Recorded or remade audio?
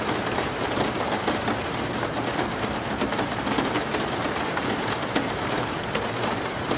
remade